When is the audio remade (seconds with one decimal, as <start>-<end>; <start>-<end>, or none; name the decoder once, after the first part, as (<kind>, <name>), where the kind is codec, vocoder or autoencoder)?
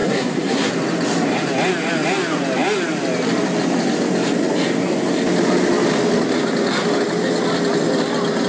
0.0-0.7 (codec, SNAC)